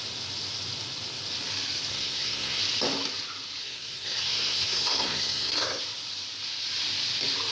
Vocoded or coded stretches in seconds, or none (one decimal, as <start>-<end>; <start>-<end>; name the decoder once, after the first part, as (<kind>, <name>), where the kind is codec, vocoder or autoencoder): 1.9-2.6 (codec, SNAC); 3.6-5.8